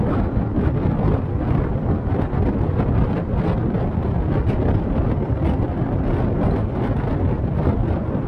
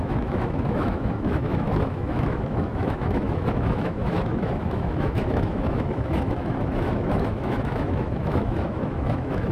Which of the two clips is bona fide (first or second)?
first